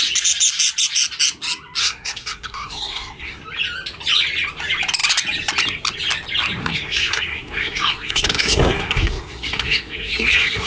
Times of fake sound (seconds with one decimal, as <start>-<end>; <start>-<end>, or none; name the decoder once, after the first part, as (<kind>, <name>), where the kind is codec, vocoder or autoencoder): 1.8-3.4 (codec, SNAC); 6.6-10.7